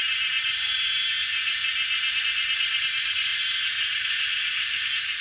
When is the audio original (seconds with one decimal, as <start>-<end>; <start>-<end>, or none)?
1.6-2.2